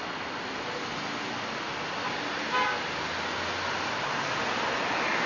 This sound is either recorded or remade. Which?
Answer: recorded